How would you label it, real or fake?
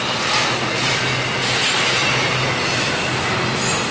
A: real